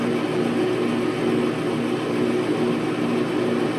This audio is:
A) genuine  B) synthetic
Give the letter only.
A